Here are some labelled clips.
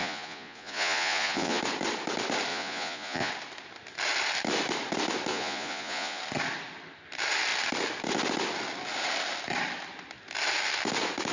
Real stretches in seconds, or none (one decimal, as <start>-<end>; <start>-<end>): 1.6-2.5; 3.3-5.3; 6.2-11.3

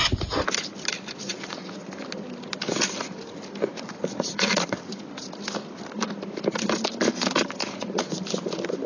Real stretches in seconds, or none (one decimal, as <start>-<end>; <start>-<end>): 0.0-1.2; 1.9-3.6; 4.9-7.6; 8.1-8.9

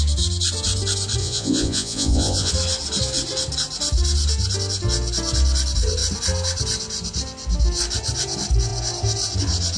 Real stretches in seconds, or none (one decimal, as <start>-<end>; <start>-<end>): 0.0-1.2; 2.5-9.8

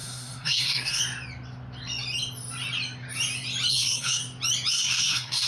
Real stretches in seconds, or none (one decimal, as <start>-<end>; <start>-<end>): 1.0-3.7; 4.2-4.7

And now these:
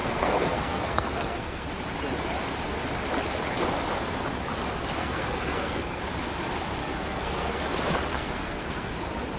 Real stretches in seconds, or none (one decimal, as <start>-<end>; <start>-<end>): 1.7-5.0; 6.0-6.8; 7.6-8.1; 8.9-9.4

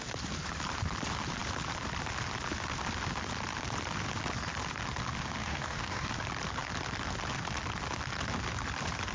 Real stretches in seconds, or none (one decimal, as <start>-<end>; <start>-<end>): 0.0-5.4; 6.1-9.1